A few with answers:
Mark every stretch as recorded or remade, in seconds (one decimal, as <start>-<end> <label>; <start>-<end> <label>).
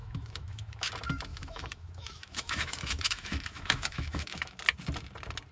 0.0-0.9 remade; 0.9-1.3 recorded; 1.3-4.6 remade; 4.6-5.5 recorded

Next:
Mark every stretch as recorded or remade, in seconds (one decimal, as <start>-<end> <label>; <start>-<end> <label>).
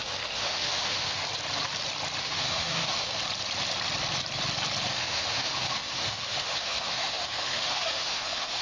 0.0-1.2 remade; 1.2-2.2 recorded; 2.2-3.2 remade; 3.2-4.9 recorded; 4.9-8.6 remade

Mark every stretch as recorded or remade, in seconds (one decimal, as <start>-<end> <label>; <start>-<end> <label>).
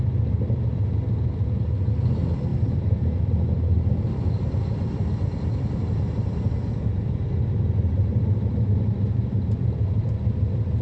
0.0-10.8 recorded